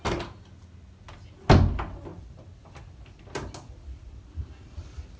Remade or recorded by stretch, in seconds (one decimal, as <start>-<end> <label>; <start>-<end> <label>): 0.0-5.2 recorded